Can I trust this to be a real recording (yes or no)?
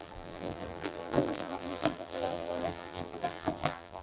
no